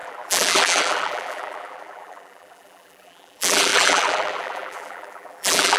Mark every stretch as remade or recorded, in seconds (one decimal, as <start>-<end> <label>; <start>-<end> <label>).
0.0-5.8 remade